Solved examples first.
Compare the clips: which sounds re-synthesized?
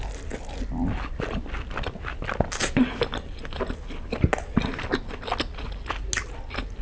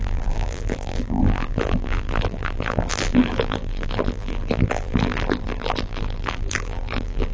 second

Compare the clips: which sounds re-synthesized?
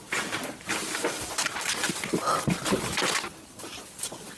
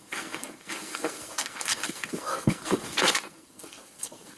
second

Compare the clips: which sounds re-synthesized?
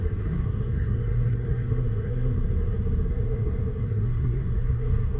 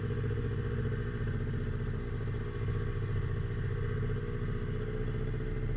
first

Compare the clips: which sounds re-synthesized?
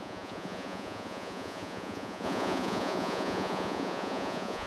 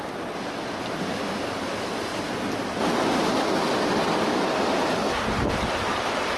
first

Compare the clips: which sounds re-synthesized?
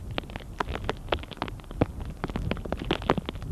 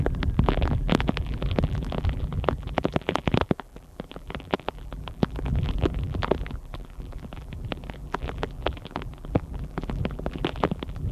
second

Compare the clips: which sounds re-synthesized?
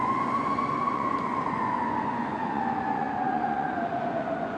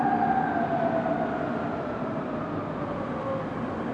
first